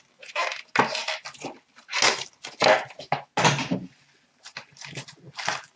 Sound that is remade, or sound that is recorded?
recorded